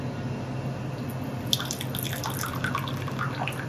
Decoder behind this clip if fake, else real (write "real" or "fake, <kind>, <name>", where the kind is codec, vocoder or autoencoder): real